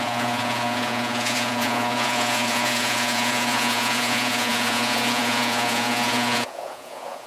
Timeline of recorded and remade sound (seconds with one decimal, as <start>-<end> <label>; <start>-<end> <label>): 0.0-7.3 remade